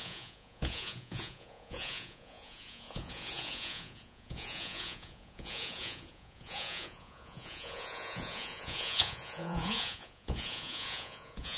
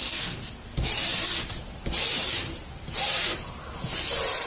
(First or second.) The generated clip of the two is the first